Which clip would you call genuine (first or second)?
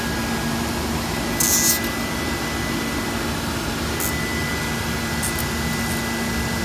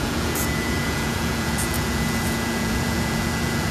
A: first